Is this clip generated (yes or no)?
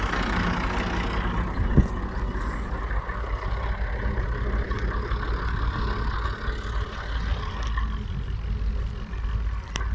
no